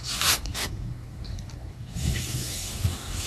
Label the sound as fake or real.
fake